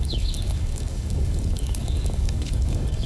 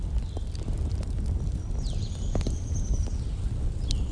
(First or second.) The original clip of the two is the second